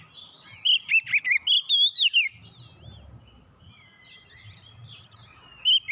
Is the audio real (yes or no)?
yes